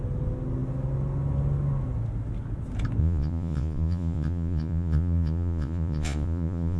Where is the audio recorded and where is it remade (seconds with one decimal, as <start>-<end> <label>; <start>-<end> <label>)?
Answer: 0.0-3.0 recorded; 3.0-6.8 remade